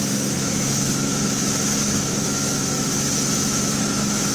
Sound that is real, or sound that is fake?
fake